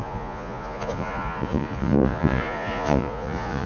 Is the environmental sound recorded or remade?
remade